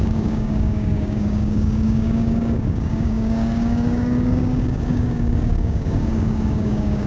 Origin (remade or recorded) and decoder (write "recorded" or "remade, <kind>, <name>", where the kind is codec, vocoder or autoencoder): remade, codec, DAC